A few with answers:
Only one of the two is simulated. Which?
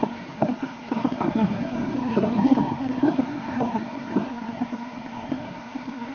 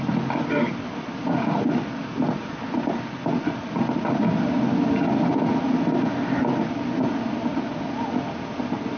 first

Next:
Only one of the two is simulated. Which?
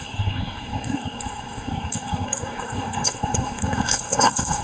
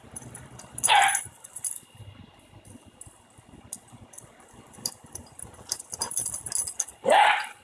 first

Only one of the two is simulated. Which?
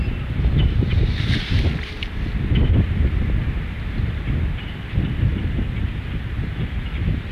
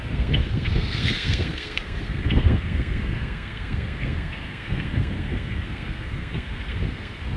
second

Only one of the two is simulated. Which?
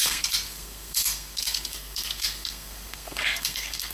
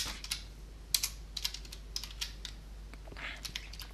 first